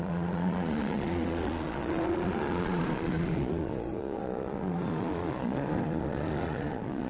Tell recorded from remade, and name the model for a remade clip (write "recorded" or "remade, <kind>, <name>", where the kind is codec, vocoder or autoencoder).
remade, vocoder, Vocos